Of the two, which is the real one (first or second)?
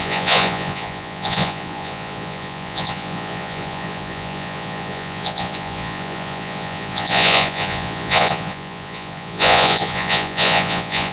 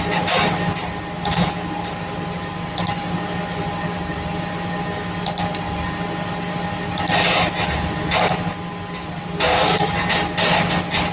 second